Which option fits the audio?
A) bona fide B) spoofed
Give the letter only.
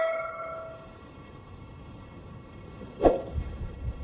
B